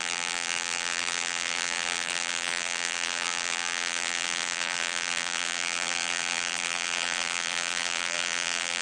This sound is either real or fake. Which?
fake